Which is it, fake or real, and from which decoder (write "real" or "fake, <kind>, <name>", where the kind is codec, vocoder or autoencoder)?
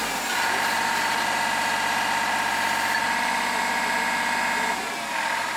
real